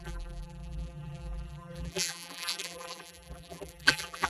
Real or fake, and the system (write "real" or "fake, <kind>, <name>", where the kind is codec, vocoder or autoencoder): fake, vocoder, BigVGAN v2